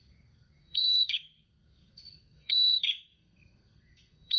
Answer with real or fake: fake